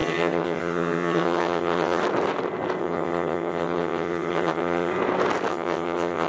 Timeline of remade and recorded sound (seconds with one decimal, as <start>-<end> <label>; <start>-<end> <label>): 0.0-2.0 remade; 2.0-2.8 recorded; 2.8-4.9 remade; 4.9-5.5 recorded; 5.5-6.3 remade